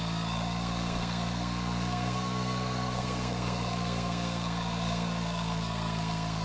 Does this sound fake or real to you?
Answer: fake